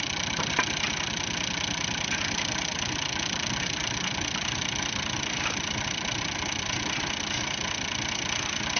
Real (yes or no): yes